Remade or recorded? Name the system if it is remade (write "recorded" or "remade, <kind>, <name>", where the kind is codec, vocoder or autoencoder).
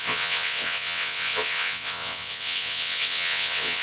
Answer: remade, vocoder, WaveNeXt